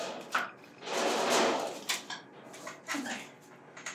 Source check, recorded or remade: recorded